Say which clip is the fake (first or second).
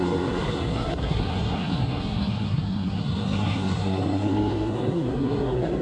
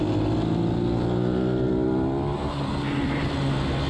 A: first